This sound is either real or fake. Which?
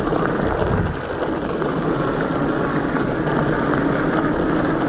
real